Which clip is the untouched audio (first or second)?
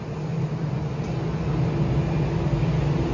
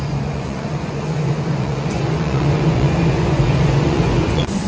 first